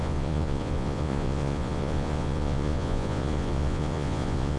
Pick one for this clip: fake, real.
fake